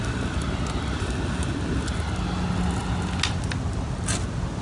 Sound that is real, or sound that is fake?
real